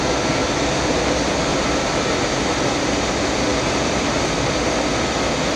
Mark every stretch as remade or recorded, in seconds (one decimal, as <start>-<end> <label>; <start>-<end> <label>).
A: 0.0-0.4 recorded; 0.4-1.0 remade; 1.0-1.5 recorded; 1.5-2.6 remade; 2.6-3.5 recorded; 3.5-4.2 remade; 4.2-5.6 recorded